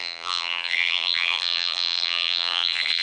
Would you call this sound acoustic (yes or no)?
no